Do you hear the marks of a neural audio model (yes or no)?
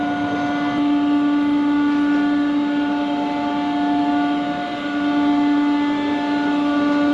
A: no